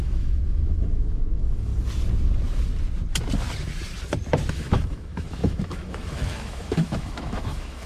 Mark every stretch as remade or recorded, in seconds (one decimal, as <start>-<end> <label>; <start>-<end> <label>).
0.0-1.7 remade; 1.7-4.5 recorded; 4.5-7.9 remade